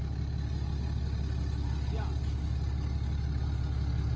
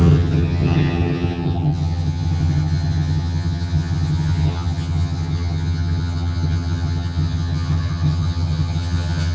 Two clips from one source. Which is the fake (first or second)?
second